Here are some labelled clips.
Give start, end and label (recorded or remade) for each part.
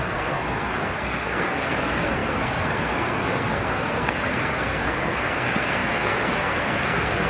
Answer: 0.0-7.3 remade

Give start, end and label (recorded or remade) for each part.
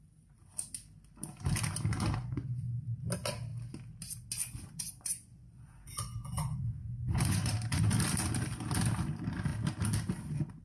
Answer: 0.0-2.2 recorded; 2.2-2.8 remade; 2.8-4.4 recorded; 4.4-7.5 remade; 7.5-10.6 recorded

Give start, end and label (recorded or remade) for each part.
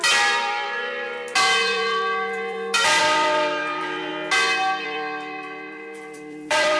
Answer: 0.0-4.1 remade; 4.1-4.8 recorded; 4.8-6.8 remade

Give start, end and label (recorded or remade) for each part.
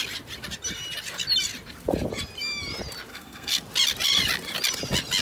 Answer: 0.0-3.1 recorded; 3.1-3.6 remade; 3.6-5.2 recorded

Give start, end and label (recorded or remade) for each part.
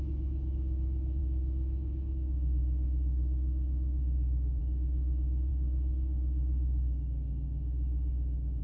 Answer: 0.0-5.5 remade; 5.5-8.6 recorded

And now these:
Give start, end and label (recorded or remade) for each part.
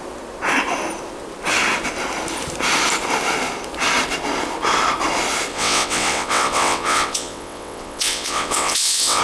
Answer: 0.0-5.5 recorded; 5.5-9.2 remade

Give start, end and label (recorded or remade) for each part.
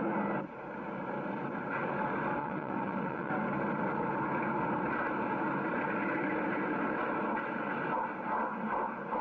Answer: 0.0-2.4 recorded; 2.4-3.3 remade; 3.3-9.2 recorded